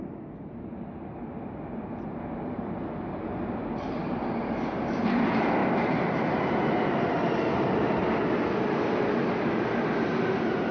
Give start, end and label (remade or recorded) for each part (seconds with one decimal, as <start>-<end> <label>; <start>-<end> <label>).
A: 0.0-10.7 recorded